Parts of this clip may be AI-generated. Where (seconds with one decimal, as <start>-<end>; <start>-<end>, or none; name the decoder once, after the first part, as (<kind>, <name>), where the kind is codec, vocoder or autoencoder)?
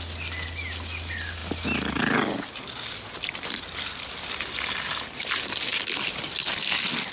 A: none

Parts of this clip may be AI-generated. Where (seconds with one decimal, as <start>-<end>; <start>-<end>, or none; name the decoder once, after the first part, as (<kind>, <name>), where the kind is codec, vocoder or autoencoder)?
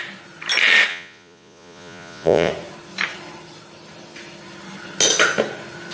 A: 0.9-2.5 (vocoder, Vocos)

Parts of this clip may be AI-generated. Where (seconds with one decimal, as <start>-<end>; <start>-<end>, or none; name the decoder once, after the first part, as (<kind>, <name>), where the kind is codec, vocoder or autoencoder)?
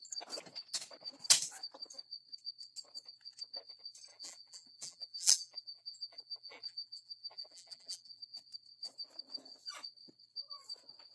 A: 4.1-8.2 (vocoder, BigVGAN v2)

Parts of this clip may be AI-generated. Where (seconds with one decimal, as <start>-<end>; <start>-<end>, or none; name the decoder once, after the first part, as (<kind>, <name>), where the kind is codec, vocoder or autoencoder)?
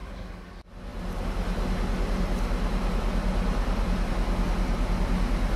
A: 0.0-0.5 (codec, DAC)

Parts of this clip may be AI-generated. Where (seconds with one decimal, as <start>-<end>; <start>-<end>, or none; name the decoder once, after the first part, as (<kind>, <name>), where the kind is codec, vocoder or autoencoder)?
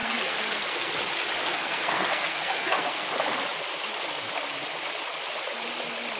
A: 0.0-0.9 (codec, SNAC); 1.4-3.1